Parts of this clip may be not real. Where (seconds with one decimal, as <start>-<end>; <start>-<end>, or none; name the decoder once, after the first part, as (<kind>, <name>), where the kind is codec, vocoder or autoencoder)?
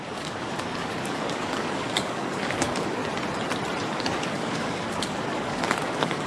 0.0-3.0 (codec, DAC); 3.9-6.3